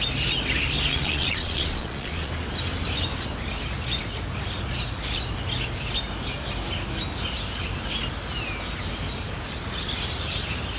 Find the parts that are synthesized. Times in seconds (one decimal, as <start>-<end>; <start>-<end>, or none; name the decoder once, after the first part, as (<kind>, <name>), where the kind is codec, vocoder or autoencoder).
0.9-2.3 (vocoder, Vocos)